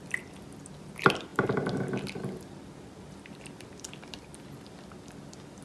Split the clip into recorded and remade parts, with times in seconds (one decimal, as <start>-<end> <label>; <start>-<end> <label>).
0.0-1.3 remade; 1.3-3.8 recorded; 3.8-4.3 remade; 4.3-4.8 recorded; 4.8-5.6 remade